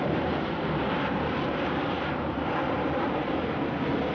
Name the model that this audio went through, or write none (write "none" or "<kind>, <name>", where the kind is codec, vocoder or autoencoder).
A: vocoder, BigVGAN v2